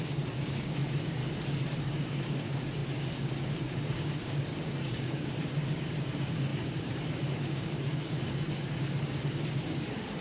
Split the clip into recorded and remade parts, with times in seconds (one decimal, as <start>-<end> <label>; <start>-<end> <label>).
0.0-1.2 remade; 1.2-1.8 recorded; 1.8-10.2 remade